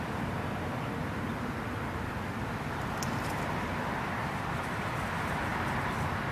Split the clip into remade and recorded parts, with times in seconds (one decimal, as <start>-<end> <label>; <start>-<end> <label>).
0.0-1.0 recorded; 1.0-4.8 remade; 4.8-6.3 recorded